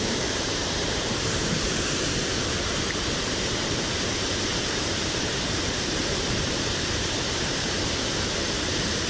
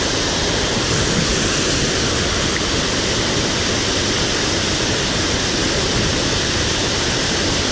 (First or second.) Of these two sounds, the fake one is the first